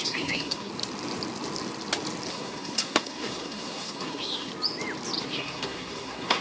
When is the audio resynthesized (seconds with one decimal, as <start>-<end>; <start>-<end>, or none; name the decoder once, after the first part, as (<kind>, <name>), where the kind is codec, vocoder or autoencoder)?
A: 0.0-0.7 (codec, SNAC); 2.3-4.5; 5.2-6.4